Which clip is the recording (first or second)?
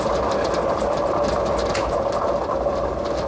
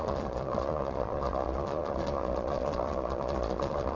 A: first